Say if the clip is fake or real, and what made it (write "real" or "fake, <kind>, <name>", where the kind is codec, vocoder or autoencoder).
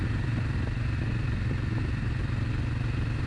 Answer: real